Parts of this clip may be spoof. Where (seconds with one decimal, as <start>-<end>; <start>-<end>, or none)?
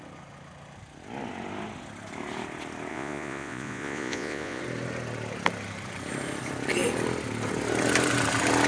2.9-4.6